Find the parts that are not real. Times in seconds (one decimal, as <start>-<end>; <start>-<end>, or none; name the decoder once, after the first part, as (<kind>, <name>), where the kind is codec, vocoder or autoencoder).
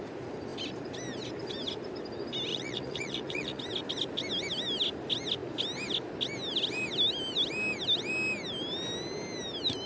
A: 2.5-3.6 (vocoder, Vocos)